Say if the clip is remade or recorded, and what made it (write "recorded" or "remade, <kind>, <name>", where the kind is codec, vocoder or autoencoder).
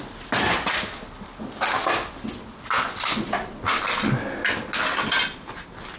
recorded